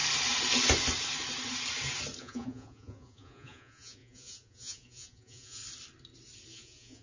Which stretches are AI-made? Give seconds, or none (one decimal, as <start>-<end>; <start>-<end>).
2.2-5.6; 6.5-7.0